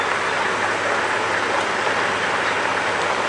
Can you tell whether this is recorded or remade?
recorded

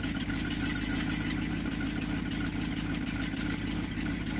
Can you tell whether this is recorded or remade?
recorded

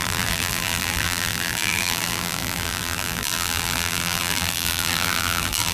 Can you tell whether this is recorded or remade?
remade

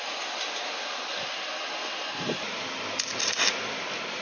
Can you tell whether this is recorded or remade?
recorded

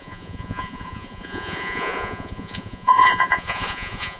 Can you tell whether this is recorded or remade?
remade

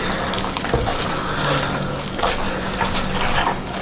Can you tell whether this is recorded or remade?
remade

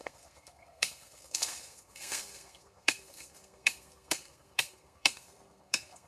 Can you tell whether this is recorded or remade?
remade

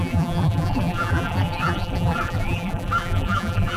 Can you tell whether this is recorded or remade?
remade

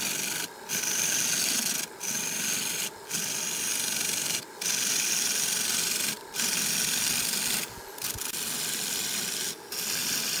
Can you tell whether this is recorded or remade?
recorded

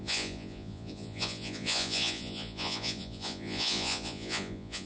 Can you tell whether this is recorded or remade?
remade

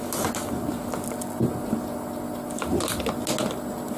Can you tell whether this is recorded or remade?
recorded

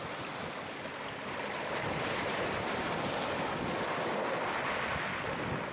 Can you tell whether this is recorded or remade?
recorded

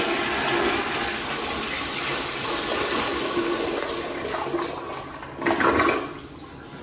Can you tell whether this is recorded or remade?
recorded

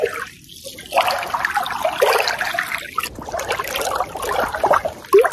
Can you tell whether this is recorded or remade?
recorded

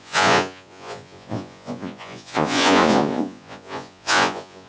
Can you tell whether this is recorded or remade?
remade